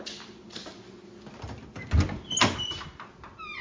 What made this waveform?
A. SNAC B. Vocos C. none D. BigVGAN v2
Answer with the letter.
C